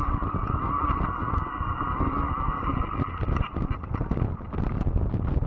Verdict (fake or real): real